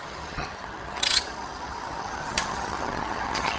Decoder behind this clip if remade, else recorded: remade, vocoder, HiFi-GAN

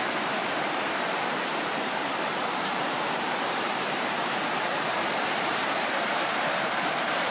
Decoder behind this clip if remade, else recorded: remade, vocoder, BigVGAN v2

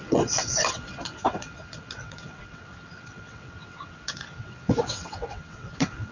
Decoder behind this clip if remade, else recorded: remade, vocoder, WaveNeXt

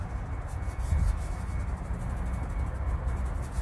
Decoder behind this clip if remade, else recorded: recorded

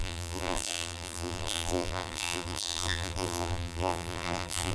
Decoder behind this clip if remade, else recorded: remade, vocoder, BigVGAN v2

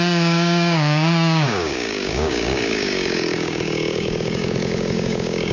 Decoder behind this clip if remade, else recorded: remade, codec, DAC